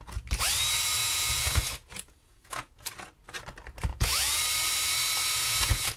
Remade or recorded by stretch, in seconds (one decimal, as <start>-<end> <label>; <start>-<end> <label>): 0.0-1.0 recorded; 1.0-2.9 remade; 2.9-3.9 recorded; 3.9-4.4 remade; 4.4-5.2 recorded; 5.2-6.0 remade